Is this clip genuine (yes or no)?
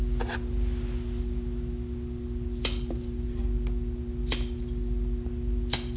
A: yes